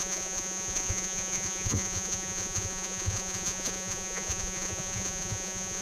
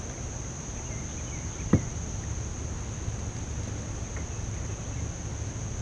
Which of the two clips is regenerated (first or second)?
first